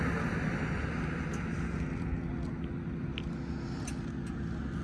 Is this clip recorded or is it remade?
recorded